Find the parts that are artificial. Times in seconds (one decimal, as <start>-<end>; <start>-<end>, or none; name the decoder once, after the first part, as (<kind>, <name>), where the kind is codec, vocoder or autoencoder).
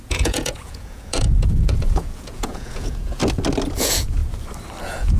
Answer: 0.0-3.2 (vocoder, Vocos); 3.7-4.2; 4.8-5.2